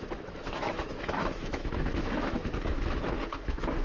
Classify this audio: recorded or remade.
remade